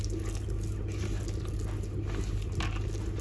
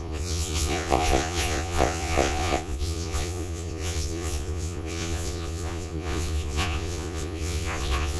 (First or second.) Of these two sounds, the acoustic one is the first